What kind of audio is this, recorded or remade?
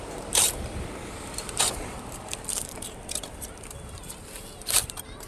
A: remade